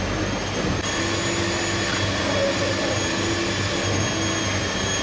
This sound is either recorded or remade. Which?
recorded